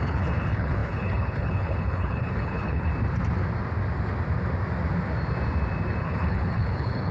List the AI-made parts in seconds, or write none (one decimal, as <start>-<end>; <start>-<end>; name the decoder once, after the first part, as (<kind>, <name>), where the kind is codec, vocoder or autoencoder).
0.0-2.9 (codec, HILCodec); 6.0-7.1